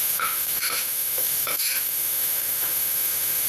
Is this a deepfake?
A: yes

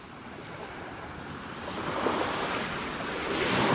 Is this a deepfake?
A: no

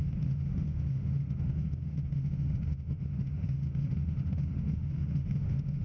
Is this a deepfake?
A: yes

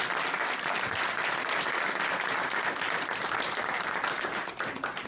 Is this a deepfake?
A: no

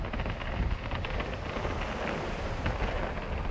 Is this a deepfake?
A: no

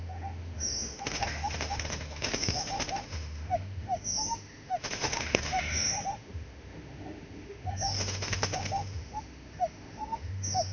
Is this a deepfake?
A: yes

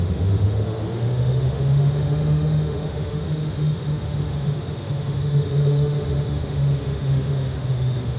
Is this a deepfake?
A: yes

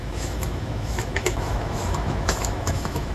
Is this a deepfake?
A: yes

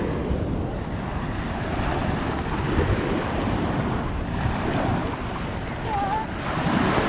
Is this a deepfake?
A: no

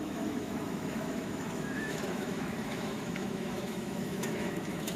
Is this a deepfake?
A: yes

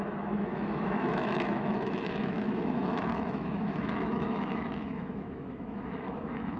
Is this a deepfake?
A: yes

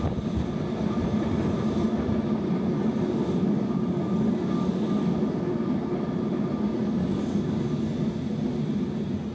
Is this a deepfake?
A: no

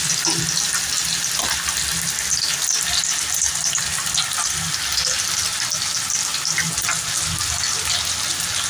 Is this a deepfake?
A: no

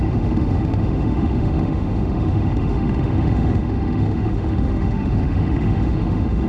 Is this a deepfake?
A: yes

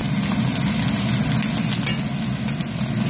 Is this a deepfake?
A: no